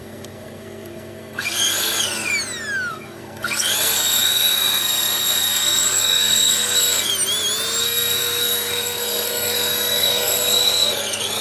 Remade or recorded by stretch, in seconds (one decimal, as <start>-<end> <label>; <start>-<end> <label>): 0.0-2.3 remade; 2.3-2.9 recorded; 2.9-7.1 remade; 7.1-7.8 recorded; 7.8-11.4 remade